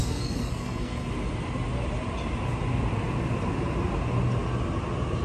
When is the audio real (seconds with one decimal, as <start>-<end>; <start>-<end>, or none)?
1.1-5.2